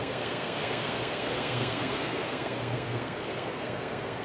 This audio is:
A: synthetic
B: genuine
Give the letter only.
A